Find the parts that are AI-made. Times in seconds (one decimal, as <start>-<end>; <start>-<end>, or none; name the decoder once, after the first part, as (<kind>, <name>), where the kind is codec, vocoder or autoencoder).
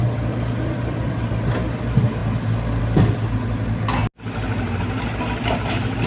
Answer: 0.0-1.3 (vocoder, BigVGAN v2)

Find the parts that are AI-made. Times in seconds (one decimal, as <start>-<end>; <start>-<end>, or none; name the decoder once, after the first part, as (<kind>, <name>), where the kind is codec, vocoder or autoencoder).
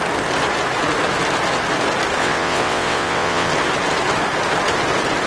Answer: 2.2-3.5 (vocoder, WaveNeXt)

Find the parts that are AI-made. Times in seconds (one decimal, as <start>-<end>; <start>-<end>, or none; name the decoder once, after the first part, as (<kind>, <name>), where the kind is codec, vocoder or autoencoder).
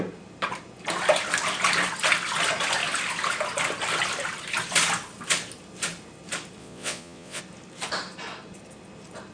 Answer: 6.6-7.4 (vocoder, Vocos)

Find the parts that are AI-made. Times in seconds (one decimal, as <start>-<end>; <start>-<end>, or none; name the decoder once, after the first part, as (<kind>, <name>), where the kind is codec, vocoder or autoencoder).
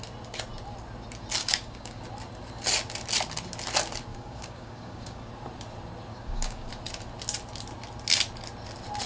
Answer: 1.4-2.0 (codec, DAC); 4.1-5.3; 6.1-6.7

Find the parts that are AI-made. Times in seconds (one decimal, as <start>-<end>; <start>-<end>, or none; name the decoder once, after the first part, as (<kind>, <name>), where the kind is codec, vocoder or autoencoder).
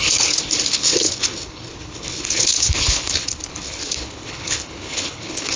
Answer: 0.0-5.6 (codec, HILCodec)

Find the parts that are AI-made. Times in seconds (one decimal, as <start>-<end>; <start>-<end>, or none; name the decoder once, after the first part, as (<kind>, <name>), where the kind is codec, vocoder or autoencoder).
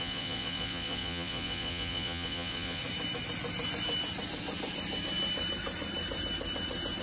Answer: 0.0-2.8 (vocoder, Vocos)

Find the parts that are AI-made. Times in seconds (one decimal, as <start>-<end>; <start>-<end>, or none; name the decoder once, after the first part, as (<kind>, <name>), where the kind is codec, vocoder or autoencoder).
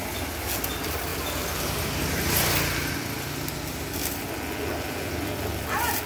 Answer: none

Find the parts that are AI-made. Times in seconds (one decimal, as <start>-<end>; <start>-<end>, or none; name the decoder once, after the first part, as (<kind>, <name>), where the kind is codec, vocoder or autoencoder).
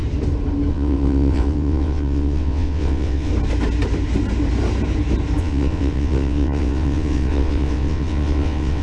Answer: 0.7-3.3 (vocoder, WaveNeXt); 5.4-8.8